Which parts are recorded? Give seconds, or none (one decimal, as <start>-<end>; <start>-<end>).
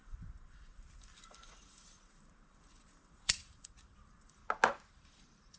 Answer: 4.4-4.9